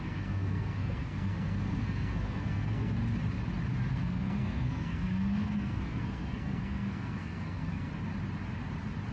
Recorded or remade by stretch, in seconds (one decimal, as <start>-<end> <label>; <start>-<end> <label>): 0.0-3.0 remade; 3.0-3.9 recorded; 3.9-7.9 remade; 7.9-9.1 recorded